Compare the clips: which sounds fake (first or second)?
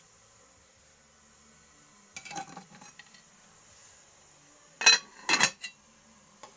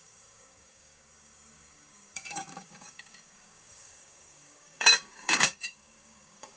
second